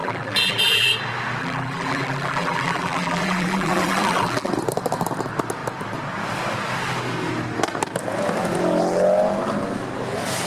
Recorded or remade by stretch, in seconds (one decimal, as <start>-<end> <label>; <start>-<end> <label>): 0.0-0.9 remade; 0.9-1.4 recorded; 1.4-4.5 remade; 4.5-10.5 recorded